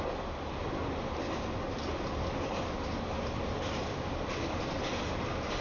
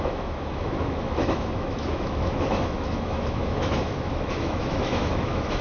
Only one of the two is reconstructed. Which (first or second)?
second